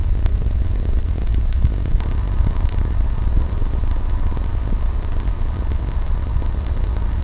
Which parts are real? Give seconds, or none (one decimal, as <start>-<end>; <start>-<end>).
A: 0.0-7.2